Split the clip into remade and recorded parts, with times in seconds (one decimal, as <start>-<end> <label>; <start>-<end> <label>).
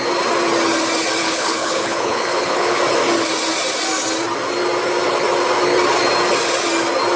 0.0-1.2 recorded; 1.2-2.8 remade; 2.8-7.2 recorded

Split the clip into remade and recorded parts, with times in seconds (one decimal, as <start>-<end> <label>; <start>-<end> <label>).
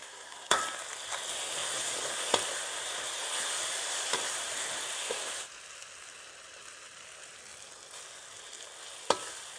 0.0-0.6 remade; 0.6-9.6 recorded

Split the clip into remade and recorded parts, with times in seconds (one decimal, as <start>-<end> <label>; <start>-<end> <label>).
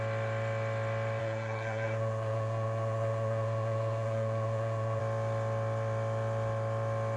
0.0-1.2 recorded; 1.2-5.0 remade; 5.0-7.2 recorded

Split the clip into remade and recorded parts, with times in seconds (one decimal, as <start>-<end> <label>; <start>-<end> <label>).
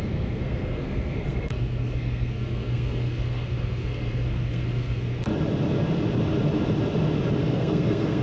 0.0-5.3 remade; 5.3-7.4 recorded; 7.4-8.2 remade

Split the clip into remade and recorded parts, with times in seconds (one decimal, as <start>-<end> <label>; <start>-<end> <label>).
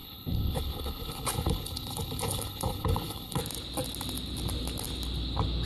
0.0-3.4 remade; 3.4-5.7 recorded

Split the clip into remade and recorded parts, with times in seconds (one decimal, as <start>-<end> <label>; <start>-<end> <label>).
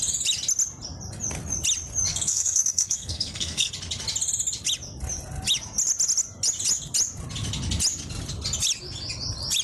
0.0-2.1 recorded; 2.1-3.7 remade; 3.7-9.6 recorded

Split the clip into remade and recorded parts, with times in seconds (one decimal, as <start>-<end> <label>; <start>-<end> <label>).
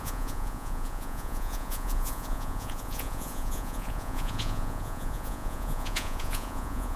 0.0-7.0 remade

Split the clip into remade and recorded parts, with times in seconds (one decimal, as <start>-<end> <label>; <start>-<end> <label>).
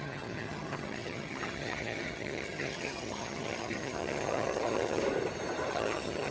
0.0-5.0 remade; 5.0-5.7 recorded; 5.7-6.3 remade